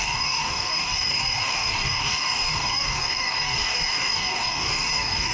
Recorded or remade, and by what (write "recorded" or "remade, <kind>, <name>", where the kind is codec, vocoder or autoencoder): remade, codec, DAC